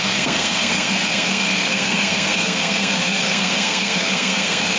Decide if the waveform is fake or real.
fake